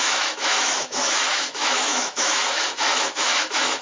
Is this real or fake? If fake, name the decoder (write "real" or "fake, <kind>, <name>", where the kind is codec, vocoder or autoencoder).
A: fake, autoencoder, DAC-VAE